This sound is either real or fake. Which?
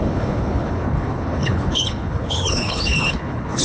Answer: fake